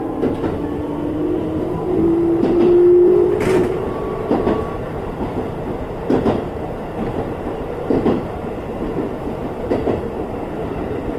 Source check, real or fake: fake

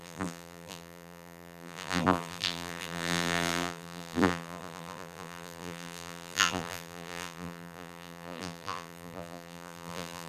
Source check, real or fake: fake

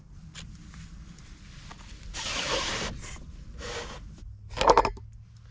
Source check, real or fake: real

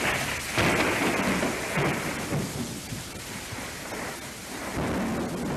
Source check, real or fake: real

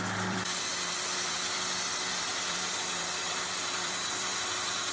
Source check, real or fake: fake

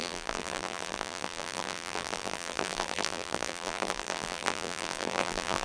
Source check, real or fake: fake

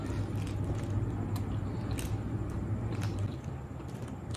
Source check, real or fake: real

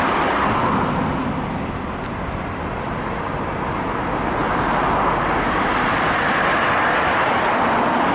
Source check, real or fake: real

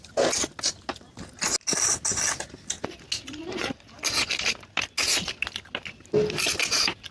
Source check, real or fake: real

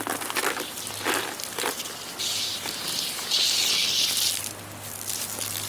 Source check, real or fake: real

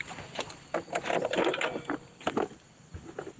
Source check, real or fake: real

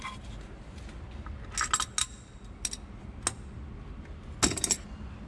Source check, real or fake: real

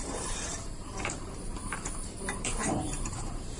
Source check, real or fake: fake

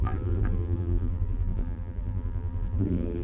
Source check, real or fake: fake